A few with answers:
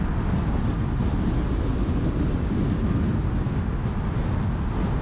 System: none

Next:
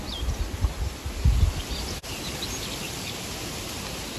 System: none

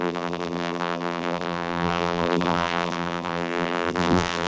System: vocoder, BigVGAN v2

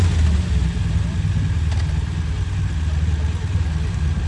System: none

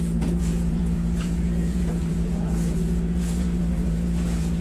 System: vocoder, Vocos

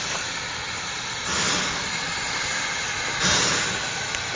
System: none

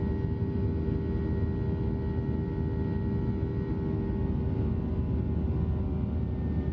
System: none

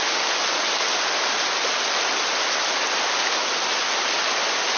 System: none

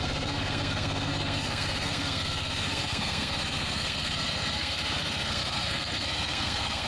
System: codec, SNAC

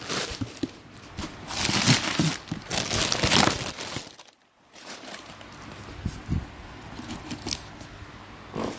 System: none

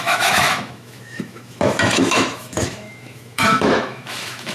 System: autoencoder, DAC-VAE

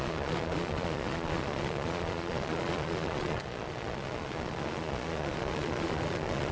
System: vocoder, Vocos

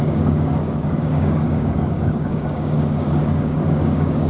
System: codec, DAC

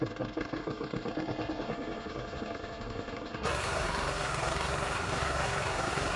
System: codec, SNAC